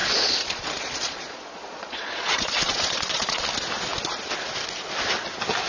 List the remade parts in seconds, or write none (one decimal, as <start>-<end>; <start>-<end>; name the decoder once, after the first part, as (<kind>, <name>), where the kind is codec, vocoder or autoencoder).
0.0-3.4 (vocoder, Vocos)